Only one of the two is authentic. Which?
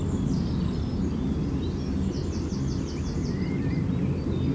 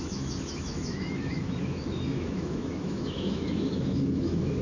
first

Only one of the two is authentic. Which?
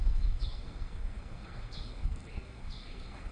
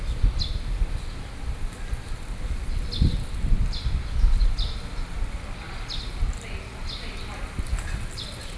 second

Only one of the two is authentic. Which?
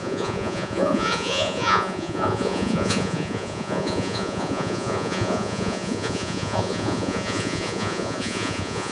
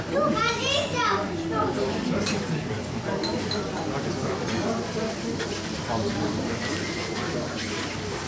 second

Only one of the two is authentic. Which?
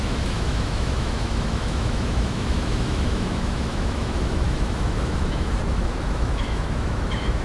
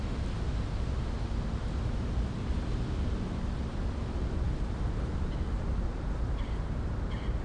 second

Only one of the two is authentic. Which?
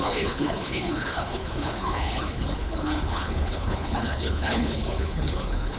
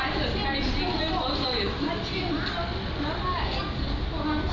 second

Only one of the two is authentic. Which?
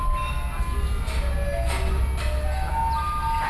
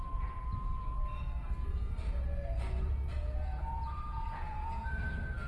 first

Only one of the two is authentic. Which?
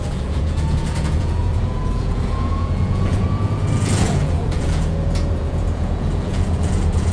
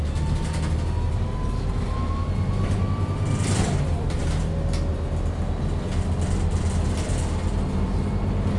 second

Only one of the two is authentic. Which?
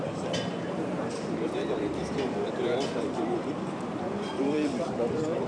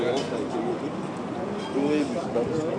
second